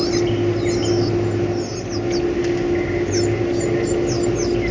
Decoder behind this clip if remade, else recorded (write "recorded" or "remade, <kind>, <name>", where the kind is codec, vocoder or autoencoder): recorded